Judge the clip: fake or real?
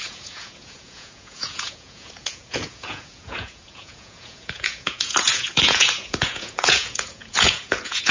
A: fake